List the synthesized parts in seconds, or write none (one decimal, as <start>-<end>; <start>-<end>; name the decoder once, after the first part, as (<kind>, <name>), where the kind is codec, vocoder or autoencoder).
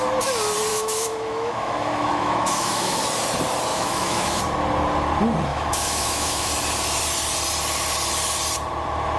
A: 0.7-3.0 (autoencoder, DAC-VAE); 3.7-4.4; 5.5-6.5